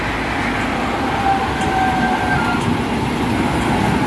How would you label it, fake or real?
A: real